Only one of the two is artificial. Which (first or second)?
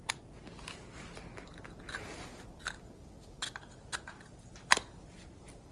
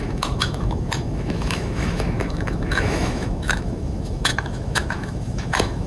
second